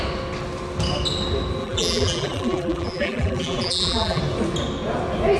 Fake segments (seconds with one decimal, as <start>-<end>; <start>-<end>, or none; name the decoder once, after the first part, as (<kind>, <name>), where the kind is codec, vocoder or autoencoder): 1.6-4.2 (vocoder, BigVGAN v2)